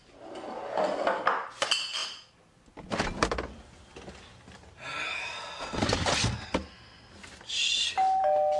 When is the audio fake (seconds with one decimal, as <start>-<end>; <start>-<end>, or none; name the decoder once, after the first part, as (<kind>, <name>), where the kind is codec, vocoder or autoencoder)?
none